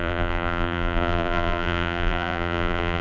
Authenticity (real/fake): fake